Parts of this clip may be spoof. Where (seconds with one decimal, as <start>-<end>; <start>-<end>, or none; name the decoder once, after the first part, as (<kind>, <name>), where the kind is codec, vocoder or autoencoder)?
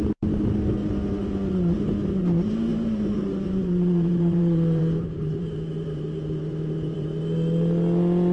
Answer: 0.8-1.3 (vocoder, BigVGAN v2); 2.7-7.2